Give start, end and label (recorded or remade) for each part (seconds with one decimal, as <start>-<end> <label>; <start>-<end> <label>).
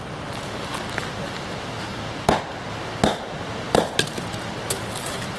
0.0-5.4 recorded